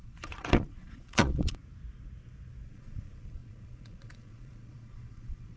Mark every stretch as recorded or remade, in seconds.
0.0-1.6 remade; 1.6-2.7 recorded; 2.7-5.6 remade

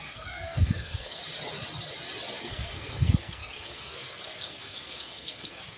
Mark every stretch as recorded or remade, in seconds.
0.0-1.2 remade; 1.2-2.4 recorded; 2.4-5.8 remade

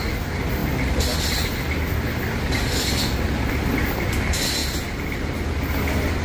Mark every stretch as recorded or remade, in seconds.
0.0-4.6 recorded; 4.6-5.5 remade; 5.5-6.2 recorded